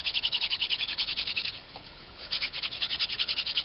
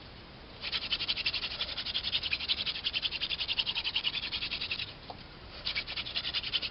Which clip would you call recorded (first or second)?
second